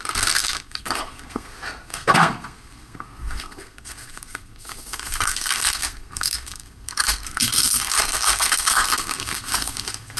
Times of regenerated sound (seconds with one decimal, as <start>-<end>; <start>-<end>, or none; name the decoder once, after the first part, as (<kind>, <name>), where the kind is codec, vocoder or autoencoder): 0.0-10.2 (codec, SNAC)